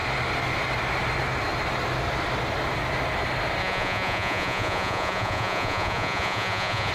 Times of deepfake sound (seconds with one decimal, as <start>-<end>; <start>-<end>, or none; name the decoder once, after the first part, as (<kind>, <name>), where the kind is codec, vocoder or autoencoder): 3.6-6.9 (vocoder, Vocos)